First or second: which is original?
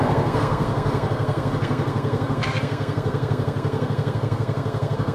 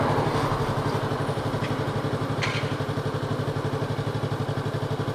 second